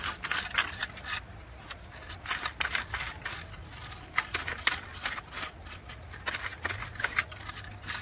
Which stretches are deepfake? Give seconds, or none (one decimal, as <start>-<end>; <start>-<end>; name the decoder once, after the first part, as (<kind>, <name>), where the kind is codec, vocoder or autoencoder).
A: none